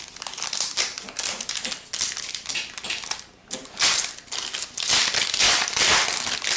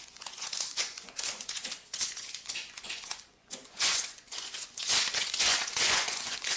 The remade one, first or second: second